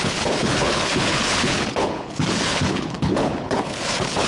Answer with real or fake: fake